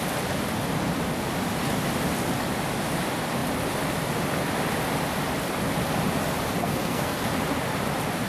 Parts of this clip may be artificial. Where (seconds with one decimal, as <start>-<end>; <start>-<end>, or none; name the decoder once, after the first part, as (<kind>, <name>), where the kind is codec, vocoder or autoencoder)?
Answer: 6.6-7.3 (codec, SNAC)